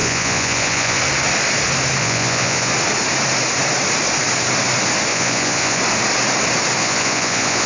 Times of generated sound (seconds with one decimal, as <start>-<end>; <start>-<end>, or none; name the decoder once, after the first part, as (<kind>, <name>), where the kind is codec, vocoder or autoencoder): 0.0-1.0 (vocoder, Vocos); 2.0-2.7; 5.1-5.8; 6.8-7.7